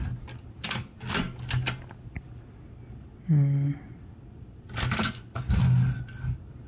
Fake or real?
real